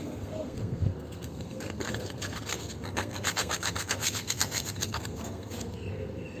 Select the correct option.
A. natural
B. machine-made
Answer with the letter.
B